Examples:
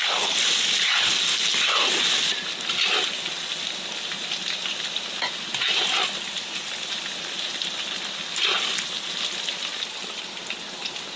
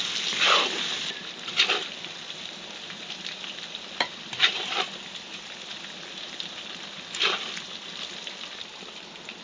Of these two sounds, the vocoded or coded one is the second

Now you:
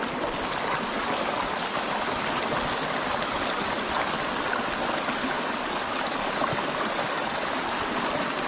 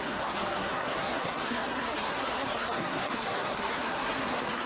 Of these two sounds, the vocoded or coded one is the second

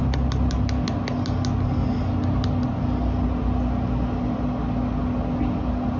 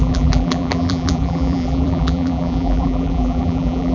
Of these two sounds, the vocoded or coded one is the second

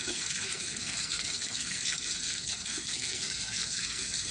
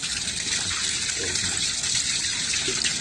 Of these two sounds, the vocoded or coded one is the first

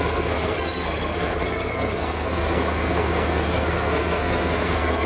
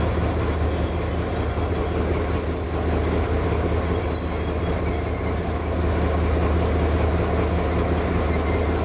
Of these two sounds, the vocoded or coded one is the first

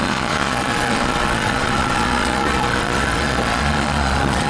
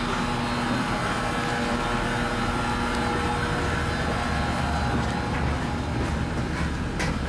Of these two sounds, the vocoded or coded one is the first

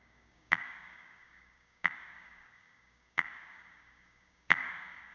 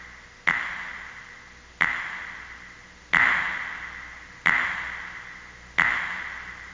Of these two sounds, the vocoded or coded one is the first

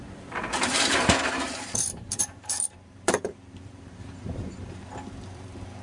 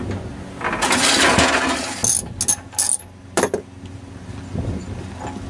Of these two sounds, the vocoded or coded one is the first